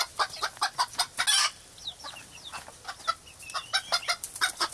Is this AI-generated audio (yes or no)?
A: no